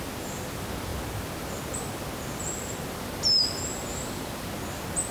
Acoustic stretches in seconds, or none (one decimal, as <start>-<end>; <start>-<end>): 0.0-3.9; 4.5-5.1